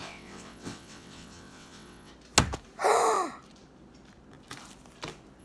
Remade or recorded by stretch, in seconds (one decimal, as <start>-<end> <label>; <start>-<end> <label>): 0.0-2.1 remade; 2.1-5.4 recorded